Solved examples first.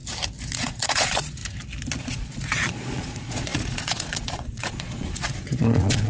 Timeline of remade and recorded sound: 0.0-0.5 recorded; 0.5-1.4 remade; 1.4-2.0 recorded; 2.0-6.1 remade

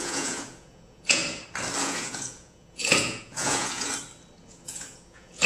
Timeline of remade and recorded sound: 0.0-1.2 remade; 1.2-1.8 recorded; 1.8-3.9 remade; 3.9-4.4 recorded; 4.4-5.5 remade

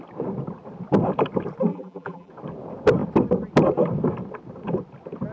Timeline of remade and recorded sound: 0.0-1.7 recorded; 1.7-2.3 remade; 2.3-5.3 recorded

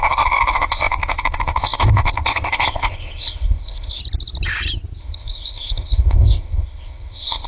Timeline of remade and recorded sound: 0.0-4.0 remade; 4.0-5.0 recorded; 5.0-7.5 remade